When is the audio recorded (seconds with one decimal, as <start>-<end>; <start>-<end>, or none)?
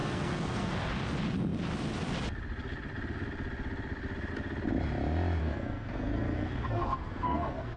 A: 0.7-5.4